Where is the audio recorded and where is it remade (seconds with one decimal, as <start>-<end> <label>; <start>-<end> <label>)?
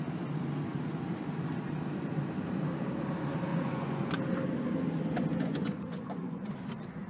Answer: 0.0-3.5 recorded; 3.5-4.1 remade; 4.1-5.3 recorded; 5.3-6.5 remade; 6.5-7.1 recorded